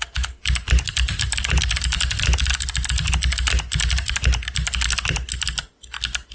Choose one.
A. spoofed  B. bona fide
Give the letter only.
B